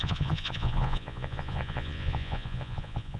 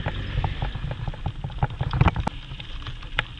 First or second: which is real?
second